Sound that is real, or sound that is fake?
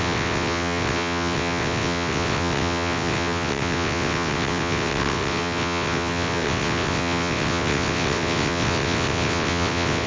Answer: fake